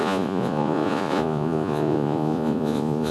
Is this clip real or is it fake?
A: fake